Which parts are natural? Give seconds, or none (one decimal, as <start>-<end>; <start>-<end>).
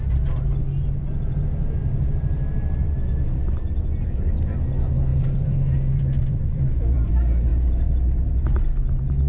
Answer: 0.0-5.1; 7.1-9.3